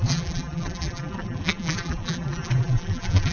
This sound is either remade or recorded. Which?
remade